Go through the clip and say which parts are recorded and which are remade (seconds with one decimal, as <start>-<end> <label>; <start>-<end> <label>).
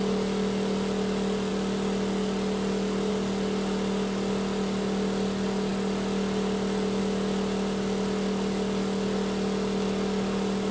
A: 0.0-10.7 recorded